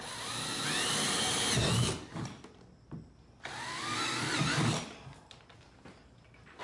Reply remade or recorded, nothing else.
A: recorded